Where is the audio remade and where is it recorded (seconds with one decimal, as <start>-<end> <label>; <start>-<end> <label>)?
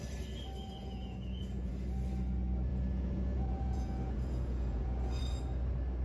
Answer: 0.0-0.8 recorded; 0.8-1.7 remade; 1.7-2.7 recorded; 2.7-5.2 remade; 5.2-6.0 recorded